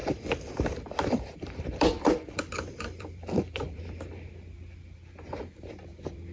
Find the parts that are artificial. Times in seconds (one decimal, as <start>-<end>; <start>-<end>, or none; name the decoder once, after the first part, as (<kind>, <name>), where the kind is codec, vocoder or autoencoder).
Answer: 0.0-3.8 (vocoder, BigVGAN v2)